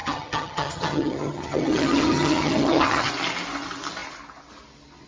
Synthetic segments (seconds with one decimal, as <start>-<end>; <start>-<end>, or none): 0.0-3.1

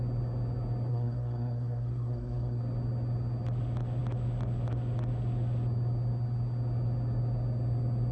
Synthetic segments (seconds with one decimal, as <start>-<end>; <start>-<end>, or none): 0.9-2.6